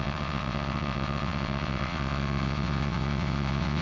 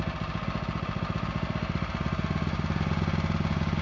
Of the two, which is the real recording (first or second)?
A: second